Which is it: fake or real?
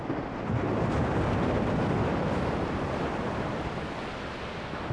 real